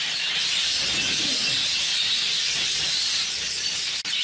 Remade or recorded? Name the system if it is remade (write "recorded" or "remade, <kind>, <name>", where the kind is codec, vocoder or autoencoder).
recorded